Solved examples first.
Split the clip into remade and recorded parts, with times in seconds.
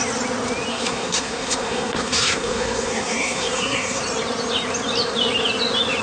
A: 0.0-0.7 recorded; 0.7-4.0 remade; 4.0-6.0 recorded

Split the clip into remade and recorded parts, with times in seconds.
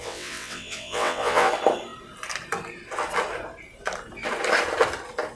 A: 0.0-1.5 remade; 1.5-5.4 recorded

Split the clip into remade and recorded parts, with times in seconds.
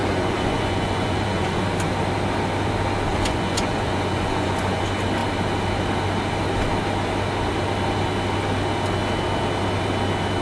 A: 0.0-1.6 remade; 1.6-3.1 recorded; 3.1-4.8 remade; 4.8-10.4 recorded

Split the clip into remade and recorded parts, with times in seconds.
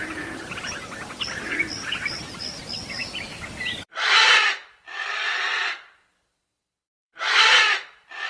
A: 0.0-8.3 remade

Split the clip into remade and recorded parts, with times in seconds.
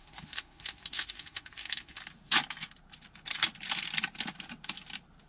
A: 0.0-2.0 remade; 2.0-5.3 recorded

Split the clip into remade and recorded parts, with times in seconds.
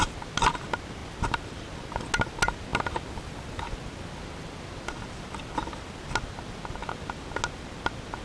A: 0.0-8.2 recorded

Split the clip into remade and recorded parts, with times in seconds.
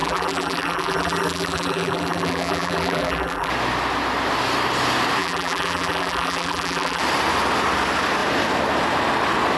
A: 0.0-3.5 remade; 3.5-5.2 recorded; 5.2-7.0 remade; 7.0-9.6 recorded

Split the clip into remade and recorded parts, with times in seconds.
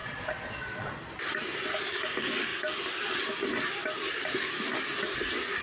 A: 0.0-0.9 remade; 0.9-5.6 recorded